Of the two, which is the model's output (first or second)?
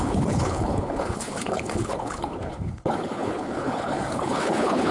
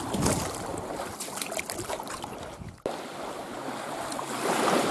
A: first